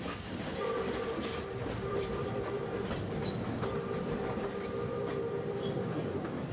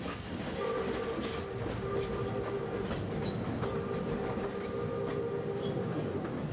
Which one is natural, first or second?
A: second